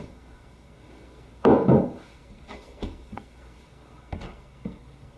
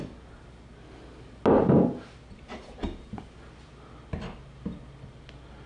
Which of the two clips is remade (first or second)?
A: first